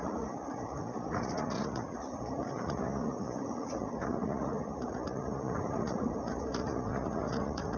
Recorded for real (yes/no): no